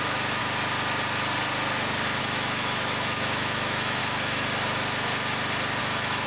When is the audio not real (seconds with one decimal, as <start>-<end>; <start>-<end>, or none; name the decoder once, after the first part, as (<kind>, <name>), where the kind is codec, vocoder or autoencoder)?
0.0-0.4 (autoencoder, DAC-VAE); 2.2-4.0; 5.8-6.3